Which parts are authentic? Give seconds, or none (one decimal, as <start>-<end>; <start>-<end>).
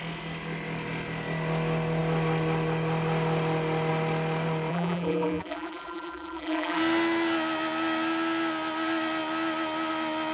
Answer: 0.0-4.7; 6.8-10.3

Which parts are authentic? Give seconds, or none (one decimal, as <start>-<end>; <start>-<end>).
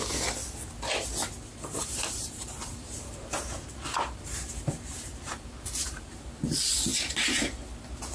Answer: 0.0-1.5; 6.1-8.1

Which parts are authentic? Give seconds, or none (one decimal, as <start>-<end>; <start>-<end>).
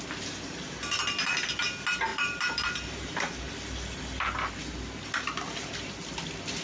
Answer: 0.0-2.1; 3.5-6.6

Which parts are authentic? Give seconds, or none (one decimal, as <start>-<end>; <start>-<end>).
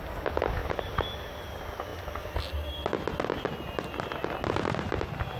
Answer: 0.0-5.4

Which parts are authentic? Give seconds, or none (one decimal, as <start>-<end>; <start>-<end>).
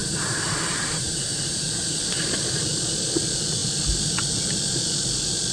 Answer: 1.2-5.5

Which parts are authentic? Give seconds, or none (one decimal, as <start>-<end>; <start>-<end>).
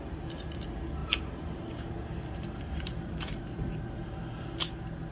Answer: 0.0-1.0; 3.8-5.1